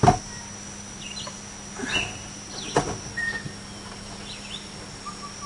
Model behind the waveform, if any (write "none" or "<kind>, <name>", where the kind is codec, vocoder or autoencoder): none